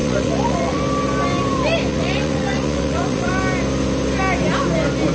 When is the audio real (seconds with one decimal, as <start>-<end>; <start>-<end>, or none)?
0.8-1.9; 3.3-5.1